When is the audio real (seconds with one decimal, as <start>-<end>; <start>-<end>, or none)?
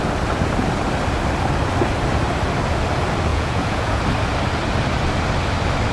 0.0-3.3; 4.0-5.9